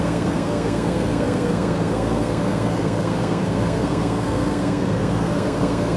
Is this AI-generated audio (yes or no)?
yes